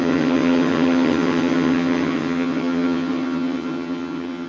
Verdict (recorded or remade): remade